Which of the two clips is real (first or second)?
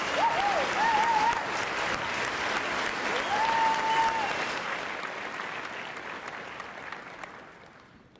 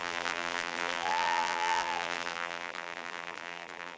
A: first